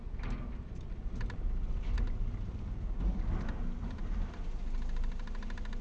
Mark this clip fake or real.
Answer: real